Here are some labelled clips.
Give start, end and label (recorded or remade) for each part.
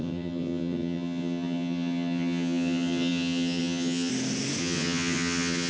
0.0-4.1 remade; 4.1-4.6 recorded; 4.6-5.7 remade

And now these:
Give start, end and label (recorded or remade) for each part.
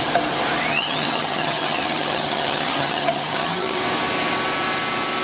0.0-0.7 recorded; 0.7-3.8 remade; 3.8-5.2 recorded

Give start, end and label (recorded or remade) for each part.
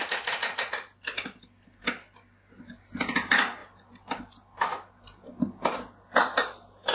0.0-6.9 recorded